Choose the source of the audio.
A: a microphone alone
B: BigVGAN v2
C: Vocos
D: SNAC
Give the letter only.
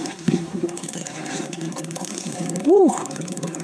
D